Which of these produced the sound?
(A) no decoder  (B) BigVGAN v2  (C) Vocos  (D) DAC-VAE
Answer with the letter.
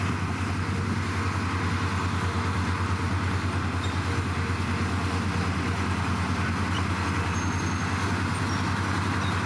A